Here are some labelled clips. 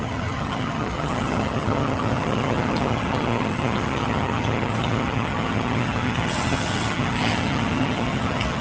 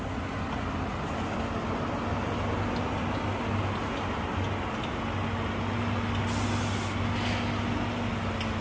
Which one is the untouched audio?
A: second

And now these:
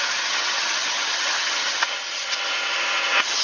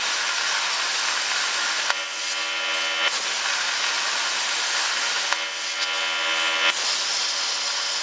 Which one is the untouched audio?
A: second